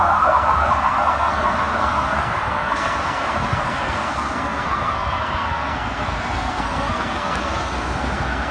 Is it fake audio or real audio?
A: fake